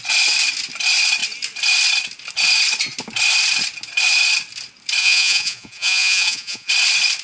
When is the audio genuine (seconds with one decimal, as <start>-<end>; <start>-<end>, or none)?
0.0-5.0; 6.7-7.2